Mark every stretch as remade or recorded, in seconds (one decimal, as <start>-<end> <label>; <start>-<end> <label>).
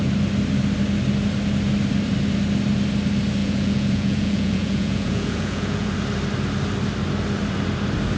0.0-3.4 recorded; 3.4-5.9 remade; 5.9-8.2 recorded